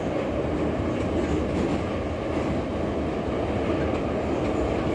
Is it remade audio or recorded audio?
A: recorded